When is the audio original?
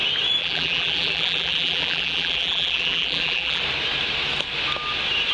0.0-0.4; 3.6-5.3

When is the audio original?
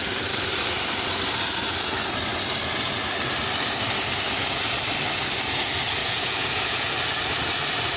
0.0-6.0; 6.9-8.0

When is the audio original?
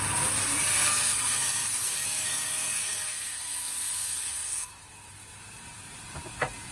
0.0-0.7; 4.7-6.7